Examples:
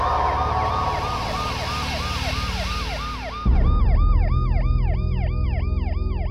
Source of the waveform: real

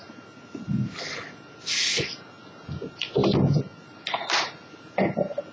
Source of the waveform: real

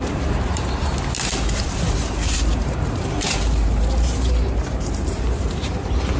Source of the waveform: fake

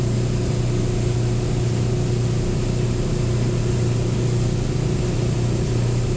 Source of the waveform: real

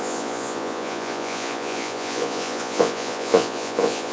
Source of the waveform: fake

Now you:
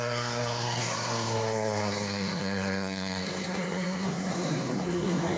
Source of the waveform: fake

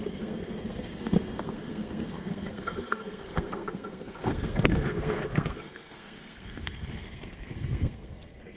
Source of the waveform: fake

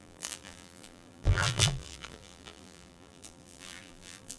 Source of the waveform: fake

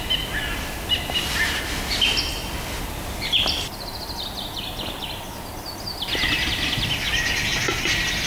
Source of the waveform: real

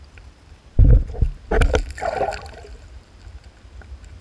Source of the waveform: real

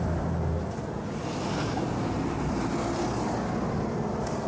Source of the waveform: real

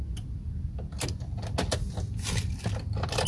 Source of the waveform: real